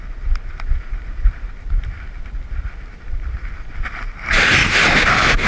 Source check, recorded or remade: recorded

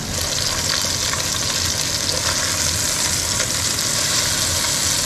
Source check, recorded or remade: recorded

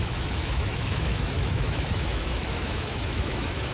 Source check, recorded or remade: remade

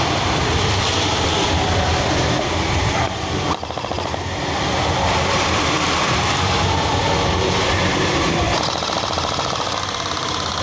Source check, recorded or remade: remade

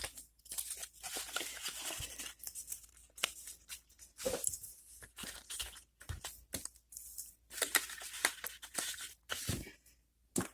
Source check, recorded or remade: recorded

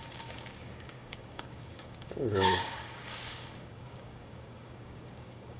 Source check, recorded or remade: remade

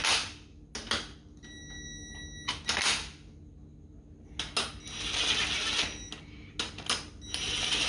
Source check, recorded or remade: recorded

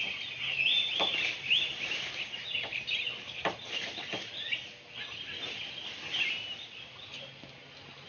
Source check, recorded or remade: recorded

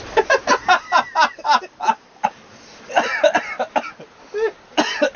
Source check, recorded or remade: recorded